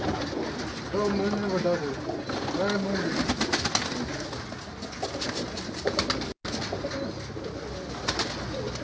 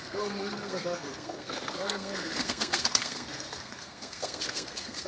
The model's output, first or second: second